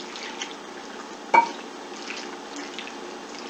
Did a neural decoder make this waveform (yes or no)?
no